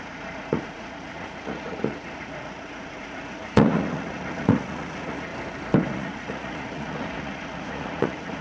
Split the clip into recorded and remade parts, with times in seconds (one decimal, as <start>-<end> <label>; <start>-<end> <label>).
0.0-5.3 remade; 5.3-5.9 recorded; 5.9-8.4 remade